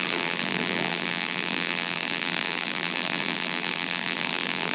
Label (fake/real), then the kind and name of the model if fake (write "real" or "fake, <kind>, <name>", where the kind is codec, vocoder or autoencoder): fake, vocoder, BigVGAN v2